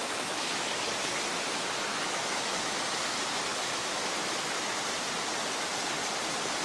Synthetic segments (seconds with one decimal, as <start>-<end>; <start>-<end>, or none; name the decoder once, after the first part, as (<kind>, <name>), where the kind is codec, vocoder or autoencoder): 0.0-0.8 (autoencoder, DAC-VAE); 1.9-2.7; 3.5-4.8